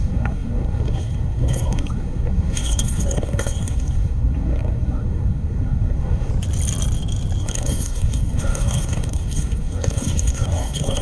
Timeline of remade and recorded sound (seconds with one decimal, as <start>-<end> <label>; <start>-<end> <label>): 0.0-6.3 remade; 6.3-7.4 recorded; 7.4-11.0 remade